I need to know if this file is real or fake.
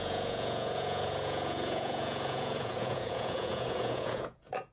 fake